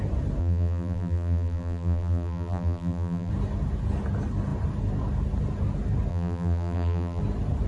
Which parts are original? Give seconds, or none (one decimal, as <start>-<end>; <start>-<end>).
0.0-0.4; 3.3-6.1; 7.2-7.7